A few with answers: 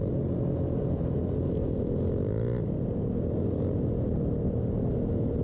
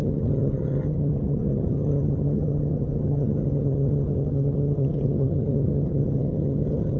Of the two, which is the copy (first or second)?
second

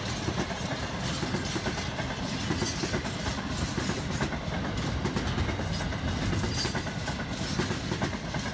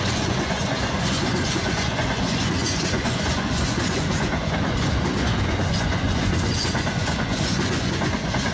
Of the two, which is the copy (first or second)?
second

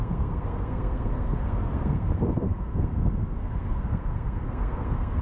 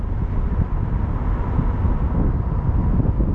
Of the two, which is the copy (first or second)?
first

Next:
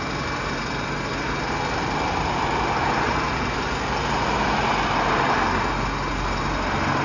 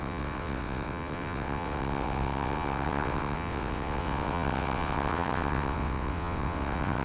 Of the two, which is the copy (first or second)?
second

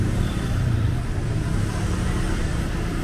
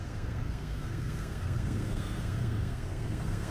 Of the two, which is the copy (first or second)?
second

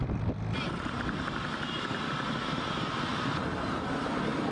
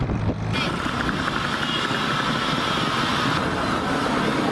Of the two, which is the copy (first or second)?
first